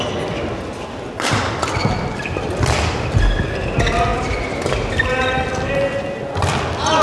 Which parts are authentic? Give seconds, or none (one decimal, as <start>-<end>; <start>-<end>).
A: 0.0-7.0